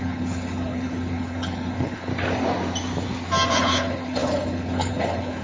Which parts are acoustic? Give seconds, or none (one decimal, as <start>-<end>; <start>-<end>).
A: 2.1-3.5